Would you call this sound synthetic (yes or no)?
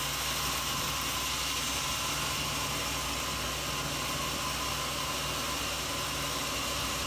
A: no